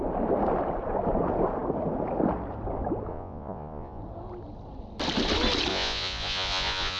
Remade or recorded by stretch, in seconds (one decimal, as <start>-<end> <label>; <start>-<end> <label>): 0.0-3.1 recorded; 3.1-4.0 remade; 4.0-5.7 recorded; 5.7-7.0 remade